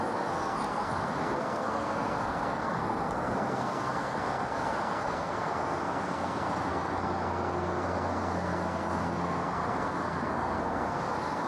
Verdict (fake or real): fake